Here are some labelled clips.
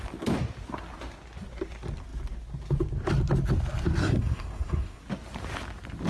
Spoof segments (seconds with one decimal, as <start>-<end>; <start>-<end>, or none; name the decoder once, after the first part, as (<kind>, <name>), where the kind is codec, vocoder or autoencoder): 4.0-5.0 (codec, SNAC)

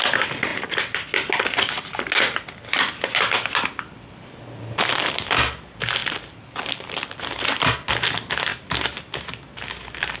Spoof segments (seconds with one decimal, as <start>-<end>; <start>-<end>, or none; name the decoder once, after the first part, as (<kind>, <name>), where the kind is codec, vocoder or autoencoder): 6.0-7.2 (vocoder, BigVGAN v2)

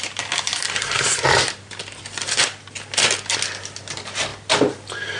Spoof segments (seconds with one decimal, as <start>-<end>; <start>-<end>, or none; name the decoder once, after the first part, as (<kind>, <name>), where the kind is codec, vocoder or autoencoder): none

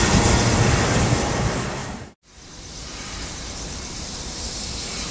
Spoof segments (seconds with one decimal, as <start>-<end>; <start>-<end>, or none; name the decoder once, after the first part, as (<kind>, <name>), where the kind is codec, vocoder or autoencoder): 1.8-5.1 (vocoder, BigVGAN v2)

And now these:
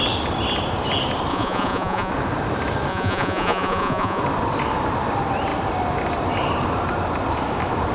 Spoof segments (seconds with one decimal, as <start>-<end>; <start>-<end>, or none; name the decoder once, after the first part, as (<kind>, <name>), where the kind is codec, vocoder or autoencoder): 1.3-2.1 (vocoder, Vocos); 2.9-4.2

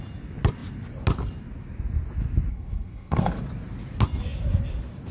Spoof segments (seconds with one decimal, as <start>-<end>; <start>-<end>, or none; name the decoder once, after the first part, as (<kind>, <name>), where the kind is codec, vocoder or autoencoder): 2.5-3.3 (codec, SNAC)

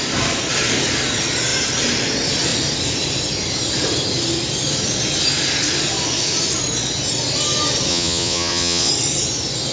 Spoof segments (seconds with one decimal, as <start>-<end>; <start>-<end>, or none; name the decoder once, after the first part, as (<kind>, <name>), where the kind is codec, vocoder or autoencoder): 7.9-8.9 (vocoder, Vocos)